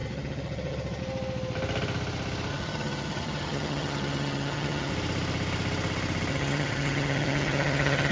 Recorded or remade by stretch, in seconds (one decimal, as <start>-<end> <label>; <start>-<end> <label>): 0.0-1.0 remade; 1.0-2.5 recorded; 2.5-4.9 remade; 4.9-6.3 recorded; 6.3-8.1 remade